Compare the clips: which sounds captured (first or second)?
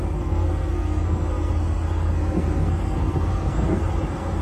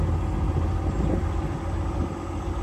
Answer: second